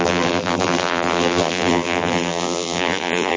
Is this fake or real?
fake